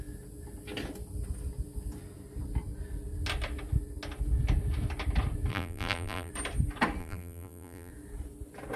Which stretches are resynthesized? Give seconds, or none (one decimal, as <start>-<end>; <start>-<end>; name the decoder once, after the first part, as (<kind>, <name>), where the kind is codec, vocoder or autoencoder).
5.5-6.3 (vocoder, BigVGAN v2); 7.0-7.9